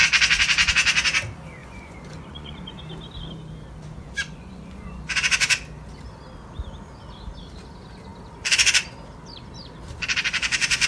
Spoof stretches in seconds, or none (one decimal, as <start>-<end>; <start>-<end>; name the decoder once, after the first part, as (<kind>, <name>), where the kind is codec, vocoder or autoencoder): 1.6-2.8 (vocoder, Vocos); 4.0-5.4

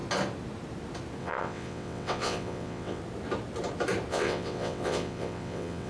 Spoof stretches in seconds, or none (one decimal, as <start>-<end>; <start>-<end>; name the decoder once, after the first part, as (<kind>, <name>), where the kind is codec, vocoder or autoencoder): 1.2-3.0 (vocoder, WaveNeXt); 4.1-5.9

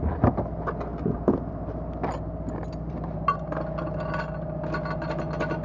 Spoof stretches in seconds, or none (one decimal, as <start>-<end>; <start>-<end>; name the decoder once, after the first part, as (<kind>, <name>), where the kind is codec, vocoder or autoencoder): none

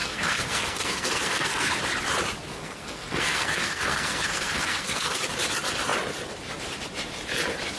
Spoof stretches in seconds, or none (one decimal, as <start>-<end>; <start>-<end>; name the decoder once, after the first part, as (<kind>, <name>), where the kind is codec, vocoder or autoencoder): 0.0-1.8 (codec, SNAC); 2.5-5.2

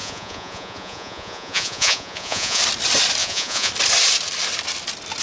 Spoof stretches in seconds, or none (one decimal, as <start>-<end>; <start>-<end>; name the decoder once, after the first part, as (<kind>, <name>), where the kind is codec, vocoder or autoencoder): 0.0-2.6 (vocoder, Vocos); 3.2-3.7

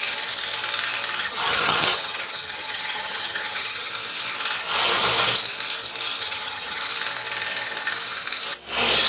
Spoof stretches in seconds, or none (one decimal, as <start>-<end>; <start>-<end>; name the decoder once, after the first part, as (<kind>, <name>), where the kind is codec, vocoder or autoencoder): 1.2-3.9 (vocoder, HiFi-GAN); 6.2-6.8

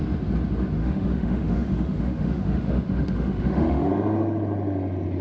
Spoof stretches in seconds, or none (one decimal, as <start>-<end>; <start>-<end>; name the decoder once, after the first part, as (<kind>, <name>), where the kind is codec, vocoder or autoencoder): 0.8-3.9 (autoencoder, DAC-VAE)